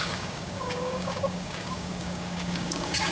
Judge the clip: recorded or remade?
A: remade